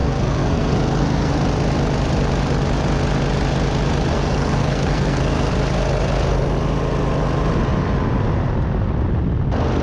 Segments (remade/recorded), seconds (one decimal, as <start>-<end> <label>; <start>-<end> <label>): 0.0-1.3 remade; 1.3-4.1 recorded; 4.1-5.5 remade; 5.5-9.8 recorded